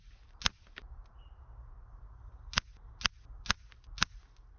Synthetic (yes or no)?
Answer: no